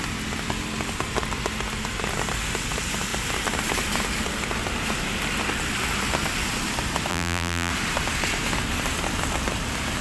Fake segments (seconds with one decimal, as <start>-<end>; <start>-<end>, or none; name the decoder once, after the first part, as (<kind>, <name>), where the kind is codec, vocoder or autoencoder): 7.1-7.7 (vocoder, BigVGAN v2)